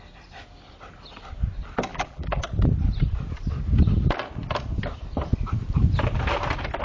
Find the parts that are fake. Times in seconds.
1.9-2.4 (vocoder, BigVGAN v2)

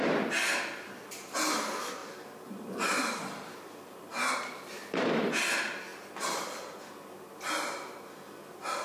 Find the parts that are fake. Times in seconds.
2.0-4.1 (vocoder, BigVGAN v2)

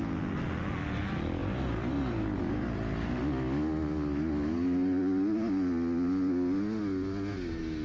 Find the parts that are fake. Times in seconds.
1.4-3.2 (vocoder, BigVGAN v2)

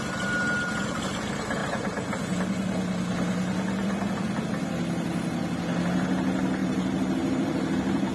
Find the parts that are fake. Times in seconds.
6.6-8.1 (vocoder, BigVGAN v2)

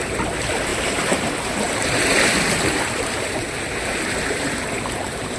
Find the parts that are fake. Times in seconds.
0.0-5.4 (vocoder, BigVGAN v2)

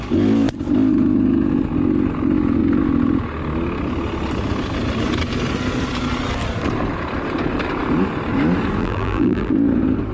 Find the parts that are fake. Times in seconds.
8.8-9.5 (vocoder, BigVGAN v2)

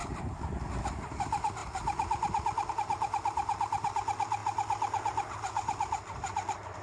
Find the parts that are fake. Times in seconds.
0.8-6.8 (vocoder, BigVGAN v2)

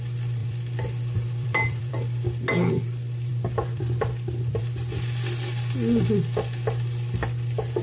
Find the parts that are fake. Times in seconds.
0.4-1.9 (vocoder, BigVGAN v2); 3.3-4.6